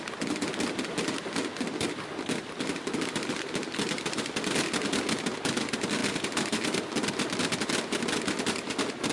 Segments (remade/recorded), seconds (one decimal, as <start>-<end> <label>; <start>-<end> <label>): 0.0-9.1 recorded